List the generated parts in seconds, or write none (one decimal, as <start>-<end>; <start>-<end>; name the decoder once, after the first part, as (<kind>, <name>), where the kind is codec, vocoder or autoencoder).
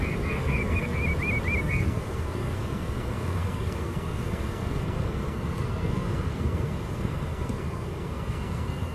0.0-1.0 (codec, SNAC); 1.6-8.9